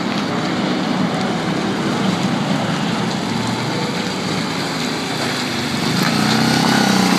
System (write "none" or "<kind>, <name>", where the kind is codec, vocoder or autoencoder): none